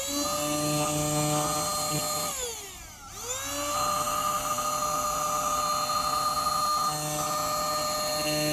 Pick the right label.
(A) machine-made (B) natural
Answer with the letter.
B